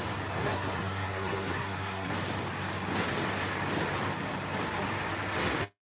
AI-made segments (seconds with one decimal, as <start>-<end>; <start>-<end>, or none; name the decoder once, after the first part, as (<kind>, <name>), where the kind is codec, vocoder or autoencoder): 0.4-2.1 (codec, SNAC)